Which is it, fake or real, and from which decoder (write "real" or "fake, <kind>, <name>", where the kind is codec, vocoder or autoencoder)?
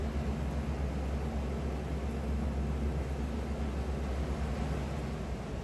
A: real